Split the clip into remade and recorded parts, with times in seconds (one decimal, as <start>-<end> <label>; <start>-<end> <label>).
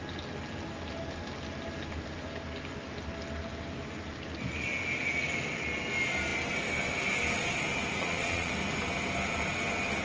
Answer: 0.0-8.0 recorded; 8.0-8.5 remade; 8.5-10.0 recorded